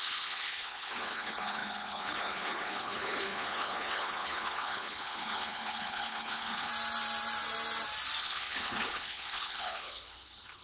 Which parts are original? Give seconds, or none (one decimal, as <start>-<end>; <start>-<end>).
6.7-8.2